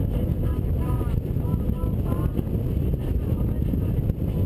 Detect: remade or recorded recorded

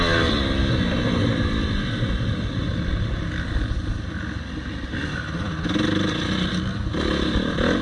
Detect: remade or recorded recorded